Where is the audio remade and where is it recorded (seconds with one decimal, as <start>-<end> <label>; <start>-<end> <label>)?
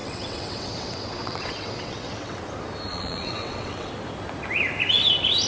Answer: 0.0-2.4 remade; 2.4-2.9 recorded; 2.9-3.9 remade; 3.9-5.5 recorded